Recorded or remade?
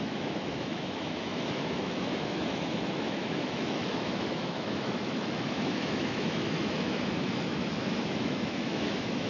remade